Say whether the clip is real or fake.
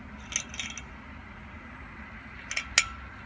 real